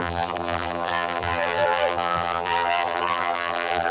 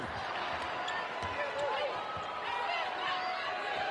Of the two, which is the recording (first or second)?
second